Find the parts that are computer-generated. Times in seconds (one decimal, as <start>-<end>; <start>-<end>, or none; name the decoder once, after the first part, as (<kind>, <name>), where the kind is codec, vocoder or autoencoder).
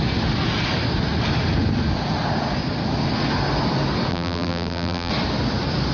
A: 4.1-5.1 (vocoder, BigVGAN v2)